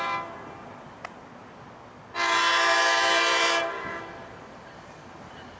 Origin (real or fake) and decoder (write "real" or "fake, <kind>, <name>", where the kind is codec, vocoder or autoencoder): real